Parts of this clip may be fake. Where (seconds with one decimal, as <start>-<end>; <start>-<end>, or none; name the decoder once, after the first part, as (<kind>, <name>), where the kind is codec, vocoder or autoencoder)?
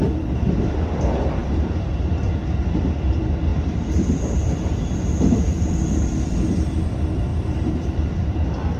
3.5-5.7 (vocoder, BigVGAN v2); 7.3-8.1